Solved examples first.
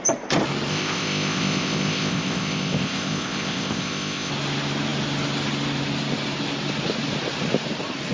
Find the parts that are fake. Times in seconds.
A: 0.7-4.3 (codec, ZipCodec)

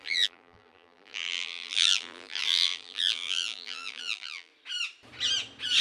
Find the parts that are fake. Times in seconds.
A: 0.0-4.5 (vocoder, BigVGAN v2)

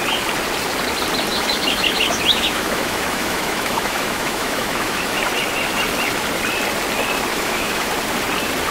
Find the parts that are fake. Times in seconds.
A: 1.3-5.2 (autoencoder, DAC-VAE); 7.3-7.9

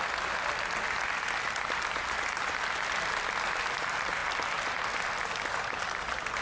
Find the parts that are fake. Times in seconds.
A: none

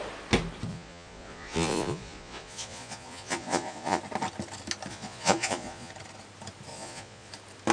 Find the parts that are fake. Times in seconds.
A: 0.7-4.0 (vocoder, Vocos); 4.9-5.9; 6.7-7.3